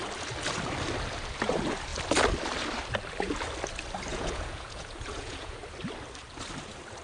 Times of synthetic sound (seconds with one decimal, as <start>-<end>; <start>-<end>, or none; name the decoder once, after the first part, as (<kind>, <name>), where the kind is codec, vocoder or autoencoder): 4.1-5.6 (vocoder, Vocos)